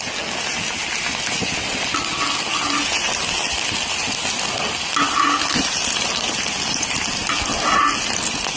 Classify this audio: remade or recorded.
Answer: recorded